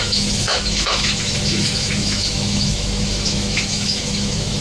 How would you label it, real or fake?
fake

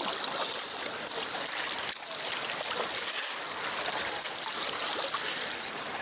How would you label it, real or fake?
real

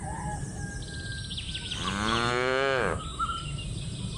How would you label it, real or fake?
real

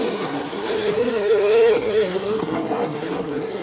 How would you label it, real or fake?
fake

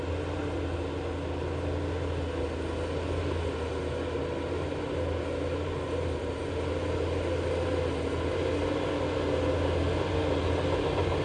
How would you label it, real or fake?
real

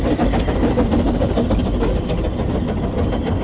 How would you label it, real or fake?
real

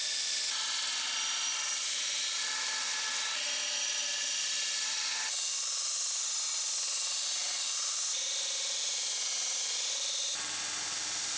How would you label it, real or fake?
fake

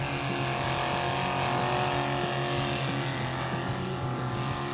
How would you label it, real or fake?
real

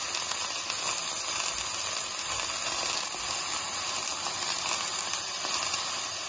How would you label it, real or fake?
real